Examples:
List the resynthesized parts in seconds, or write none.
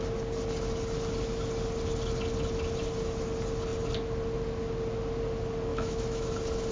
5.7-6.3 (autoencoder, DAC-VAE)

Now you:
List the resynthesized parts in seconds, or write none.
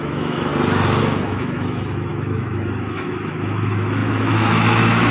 0.0-0.5 (autoencoder, DAC-VAE); 1.0-5.1